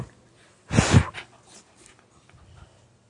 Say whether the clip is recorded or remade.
recorded